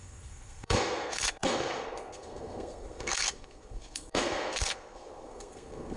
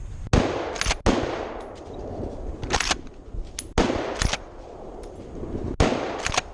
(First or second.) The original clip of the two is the second